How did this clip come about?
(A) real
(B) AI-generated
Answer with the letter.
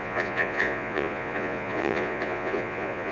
B